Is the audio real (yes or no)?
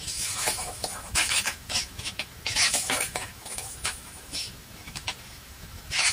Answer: no